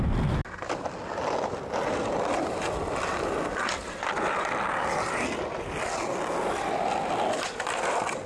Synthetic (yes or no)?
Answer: no